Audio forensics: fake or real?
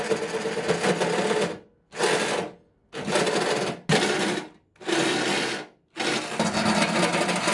real